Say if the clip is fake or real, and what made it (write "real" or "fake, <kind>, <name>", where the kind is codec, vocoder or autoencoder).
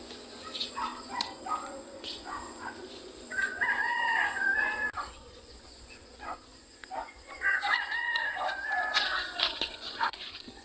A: fake, vocoder, Vocos